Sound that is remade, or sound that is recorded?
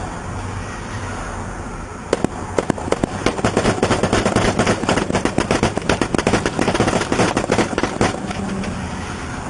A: recorded